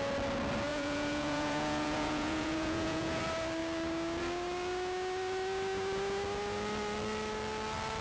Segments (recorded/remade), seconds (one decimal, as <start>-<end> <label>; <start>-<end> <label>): 0.0-0.7 recorded; 0.7-3.2 remade; 3.2-8.0 recorded